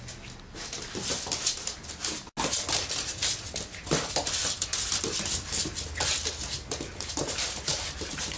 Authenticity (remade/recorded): recorded